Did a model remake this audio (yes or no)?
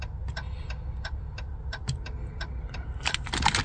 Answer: no